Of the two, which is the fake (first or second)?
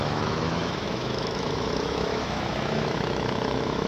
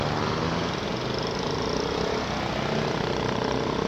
first